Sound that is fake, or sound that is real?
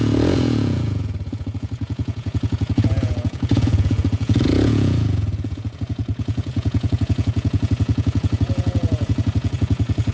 fake